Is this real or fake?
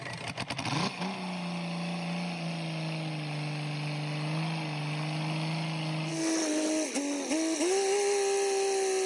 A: real